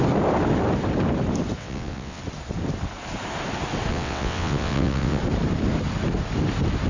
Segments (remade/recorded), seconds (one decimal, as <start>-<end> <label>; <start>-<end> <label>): 0.0-1.6 recorded; 1.6-2.2 remade; 2.2-3.9 recorded; 3.9-5.2 remade; 5.2-6.9 recorded